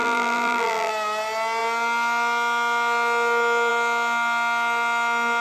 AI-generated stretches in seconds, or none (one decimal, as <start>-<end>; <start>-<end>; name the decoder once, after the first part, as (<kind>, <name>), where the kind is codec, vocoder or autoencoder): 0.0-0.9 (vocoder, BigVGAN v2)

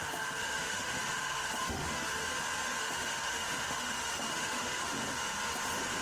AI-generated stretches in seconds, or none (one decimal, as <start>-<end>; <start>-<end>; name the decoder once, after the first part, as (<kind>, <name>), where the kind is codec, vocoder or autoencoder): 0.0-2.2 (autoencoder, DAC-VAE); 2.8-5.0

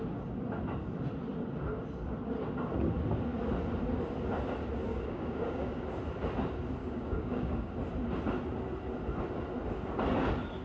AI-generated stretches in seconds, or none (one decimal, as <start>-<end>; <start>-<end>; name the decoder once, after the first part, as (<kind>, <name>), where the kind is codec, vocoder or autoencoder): 4.9-5.8 (codec, DAC); 6.8-7.7

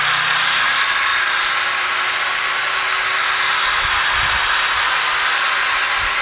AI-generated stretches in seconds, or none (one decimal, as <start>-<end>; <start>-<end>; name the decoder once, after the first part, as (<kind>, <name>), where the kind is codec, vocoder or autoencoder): none